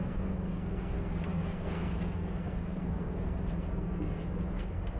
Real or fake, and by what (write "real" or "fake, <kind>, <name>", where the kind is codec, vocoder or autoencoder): fake, codec, SNAC